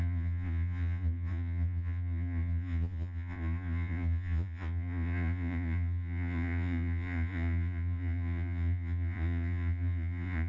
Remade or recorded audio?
remade